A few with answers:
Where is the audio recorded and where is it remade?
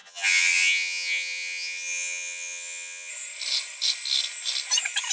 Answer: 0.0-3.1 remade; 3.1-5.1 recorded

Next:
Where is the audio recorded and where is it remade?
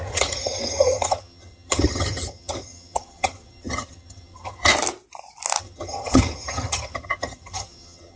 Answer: 0.0-4.7 remade; 4.7-5.6 recorded; 5.6-8.2 remade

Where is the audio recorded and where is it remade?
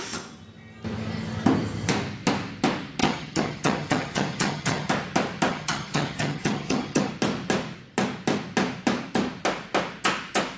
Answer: 0.0-3.0 recorded; 3.0-4.9 remade; 4.9-5.5 recorded; 5.5-7.1 remade; 7.1-10.6 recorded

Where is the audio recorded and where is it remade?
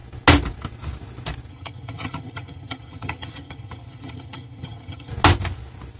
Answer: 0.0-1.5 recorded; 1.5-5.1 remade; 5.1-6.0 recorded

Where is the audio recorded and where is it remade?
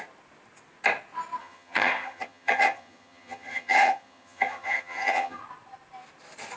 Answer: 0.0-1.4 recorded; 1.4-5.4 remade; 5.4-6.6 recorded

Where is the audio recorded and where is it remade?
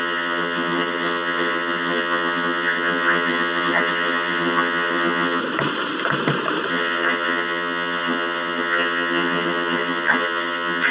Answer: 0.0-5.4 remade; 5.4-6.7 recorded; 6.7-10.9 remade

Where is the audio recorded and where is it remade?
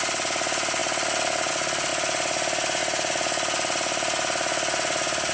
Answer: 0.0-5.3 recorded